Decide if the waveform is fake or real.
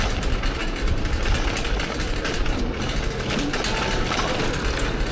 real